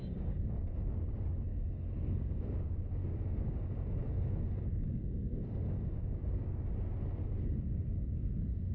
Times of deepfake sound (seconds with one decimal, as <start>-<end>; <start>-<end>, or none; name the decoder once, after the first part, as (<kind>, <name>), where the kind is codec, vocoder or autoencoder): 0.0-0.9 (codec, DAC); 1.5-6.7